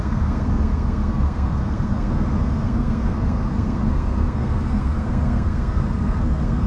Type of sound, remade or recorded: remade